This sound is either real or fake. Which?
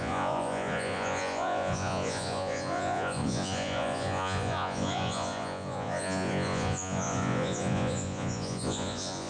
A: fake